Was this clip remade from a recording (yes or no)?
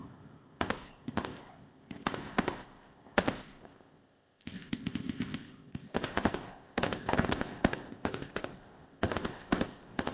yes